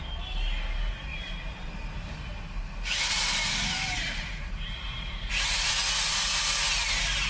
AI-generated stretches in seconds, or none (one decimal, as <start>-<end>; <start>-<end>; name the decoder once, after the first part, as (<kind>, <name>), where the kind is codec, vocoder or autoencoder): 1.1-1.7 (vocoder, BigVGAN v2); 3.4-5.7